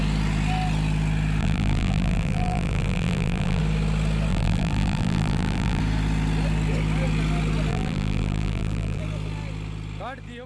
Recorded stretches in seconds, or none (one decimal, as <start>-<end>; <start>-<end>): 0.0-1.4; 3.6-4.3; 5.8-7.7; 9.0-10.5